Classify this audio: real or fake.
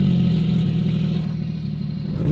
real